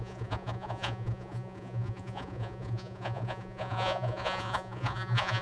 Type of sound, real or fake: fake